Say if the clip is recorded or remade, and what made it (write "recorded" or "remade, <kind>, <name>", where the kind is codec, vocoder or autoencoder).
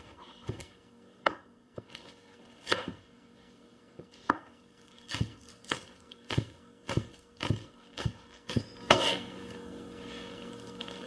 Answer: remade, codec, SNAC